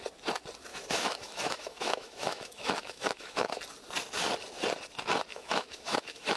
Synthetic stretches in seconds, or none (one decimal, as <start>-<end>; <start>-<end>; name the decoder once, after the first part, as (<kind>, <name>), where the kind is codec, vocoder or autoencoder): 0.7-3.6 (autoencoder, DAC-VAE); 5.3-6.4